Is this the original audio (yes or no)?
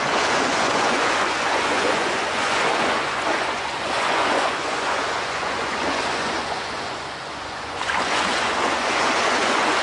no